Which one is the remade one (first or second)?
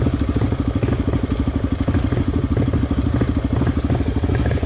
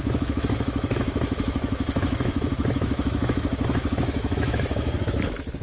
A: second